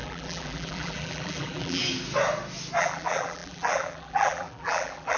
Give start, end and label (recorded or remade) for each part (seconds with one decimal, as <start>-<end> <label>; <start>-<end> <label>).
0.0-1.8 remade; 1.8-2.8 recorded; 2.8-5.2 remade